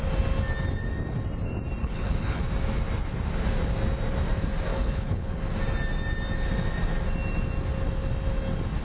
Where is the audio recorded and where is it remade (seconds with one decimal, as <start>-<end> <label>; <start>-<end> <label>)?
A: 0.0-1.8 recorded; 1.8-2.4 remade; 2.4-4.7 recorded; 4.7-5.4 remade; 5.4-8.8 recorded